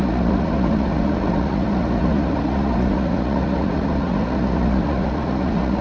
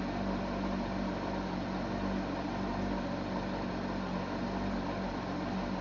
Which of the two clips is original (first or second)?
second